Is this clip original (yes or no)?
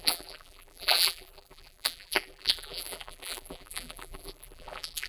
no